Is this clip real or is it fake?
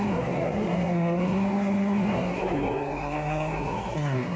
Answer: fake